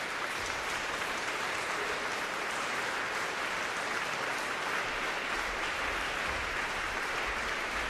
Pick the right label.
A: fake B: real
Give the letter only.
A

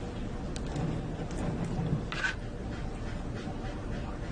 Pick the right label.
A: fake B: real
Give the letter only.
B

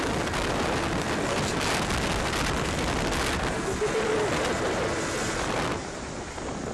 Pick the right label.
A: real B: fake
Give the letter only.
A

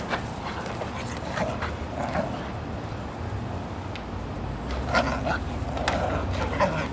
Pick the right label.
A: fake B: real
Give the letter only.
B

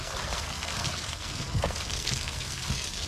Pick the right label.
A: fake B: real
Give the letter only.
A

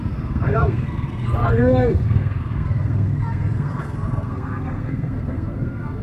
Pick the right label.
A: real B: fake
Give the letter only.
B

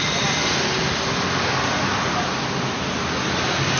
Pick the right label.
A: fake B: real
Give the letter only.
B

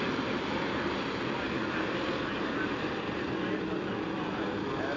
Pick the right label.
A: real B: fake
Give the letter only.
A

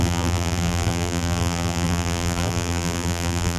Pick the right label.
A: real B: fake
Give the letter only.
B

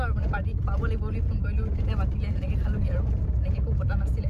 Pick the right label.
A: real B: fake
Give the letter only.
A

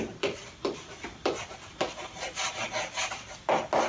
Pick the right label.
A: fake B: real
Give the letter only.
B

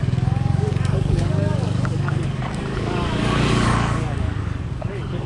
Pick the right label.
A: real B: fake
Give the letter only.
B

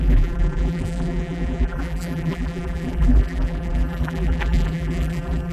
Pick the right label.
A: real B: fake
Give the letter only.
B